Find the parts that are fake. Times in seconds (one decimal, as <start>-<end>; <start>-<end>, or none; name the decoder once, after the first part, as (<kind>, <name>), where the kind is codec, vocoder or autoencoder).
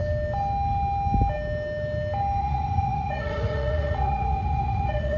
2.4-5.2 (vocoder, Vocos)